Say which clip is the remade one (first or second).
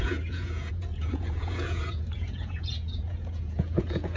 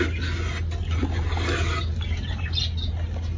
first